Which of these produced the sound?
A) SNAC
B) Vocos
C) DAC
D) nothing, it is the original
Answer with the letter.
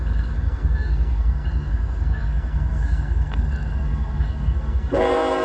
A